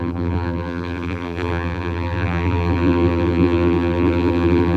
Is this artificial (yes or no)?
yes